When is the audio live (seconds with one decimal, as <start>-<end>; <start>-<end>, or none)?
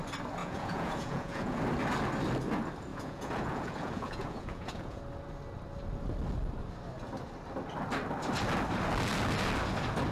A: 0.0-0.4; 1.6-2.9; 5.0-10.1